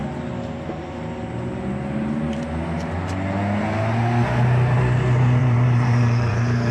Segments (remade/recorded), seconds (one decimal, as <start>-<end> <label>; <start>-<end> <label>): 0.0-5.4 recorded; 5.4-6.7 remade